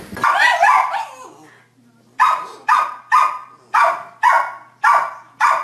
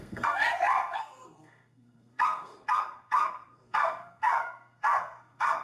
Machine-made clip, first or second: second